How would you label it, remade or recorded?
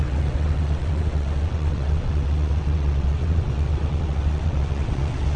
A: remade